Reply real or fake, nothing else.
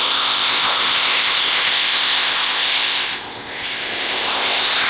fake